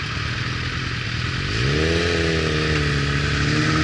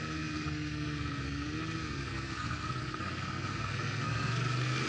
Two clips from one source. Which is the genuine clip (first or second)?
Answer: first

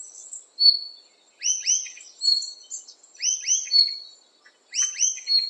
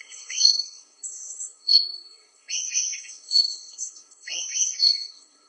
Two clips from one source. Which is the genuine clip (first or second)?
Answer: first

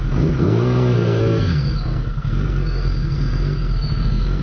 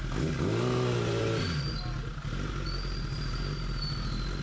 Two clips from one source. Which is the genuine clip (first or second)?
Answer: second